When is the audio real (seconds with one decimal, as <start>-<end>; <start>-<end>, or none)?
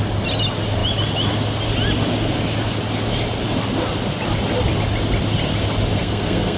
0.0-6.0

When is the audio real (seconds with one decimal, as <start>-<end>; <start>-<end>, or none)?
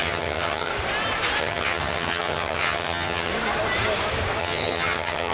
0.7-1.4; 3.3-4.4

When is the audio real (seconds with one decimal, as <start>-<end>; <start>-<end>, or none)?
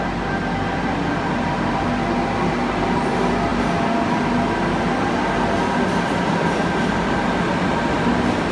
0.0-8.5